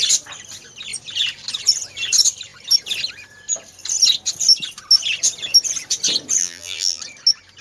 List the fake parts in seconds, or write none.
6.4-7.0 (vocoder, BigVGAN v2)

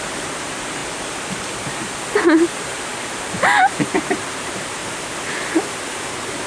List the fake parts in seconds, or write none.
0.0-0.8 (vocoder, BigVGAN v2); 2.4-4.8; 5.8-6.5

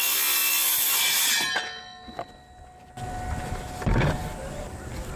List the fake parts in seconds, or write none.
none

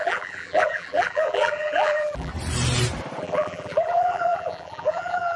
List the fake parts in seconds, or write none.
0.0-2.3 (vocoder, BigVGAN v2); 3.2-5.4

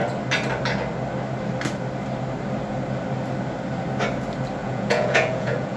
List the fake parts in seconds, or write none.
4.6-5.8 (vocoder, Vocos)

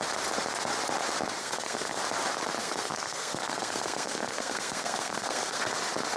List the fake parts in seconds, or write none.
1.4-2.0 (codec, SNAC); 2.6-5.6

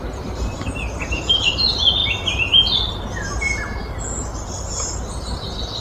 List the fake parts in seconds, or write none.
none